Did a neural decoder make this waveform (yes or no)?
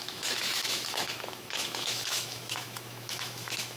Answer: yes